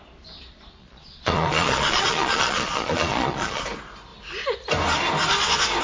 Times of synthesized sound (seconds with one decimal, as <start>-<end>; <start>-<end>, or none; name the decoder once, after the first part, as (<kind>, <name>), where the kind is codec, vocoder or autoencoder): 0.8-3.6 (vocoder, Vocos)